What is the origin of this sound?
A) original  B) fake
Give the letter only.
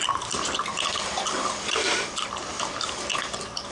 A